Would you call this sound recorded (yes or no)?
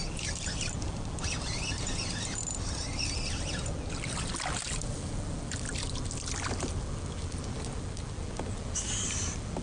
yes